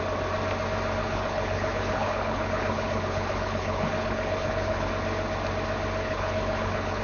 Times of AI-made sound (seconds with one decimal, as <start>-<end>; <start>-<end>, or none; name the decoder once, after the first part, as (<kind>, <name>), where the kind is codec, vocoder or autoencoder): 1.0-4.9 (codec, HILCodec); 6.0-7.0